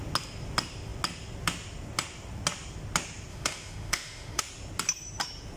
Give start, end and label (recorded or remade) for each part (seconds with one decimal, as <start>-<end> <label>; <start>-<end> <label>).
0.0-3.3 recorded; 3.3-4.4 remade; 4.4-5.6 recorded